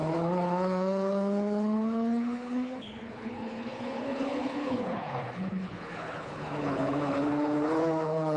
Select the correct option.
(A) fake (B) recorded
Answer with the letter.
A